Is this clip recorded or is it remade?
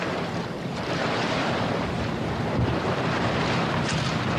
remade